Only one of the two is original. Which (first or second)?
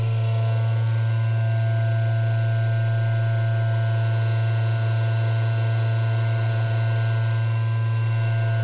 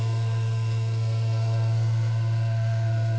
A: first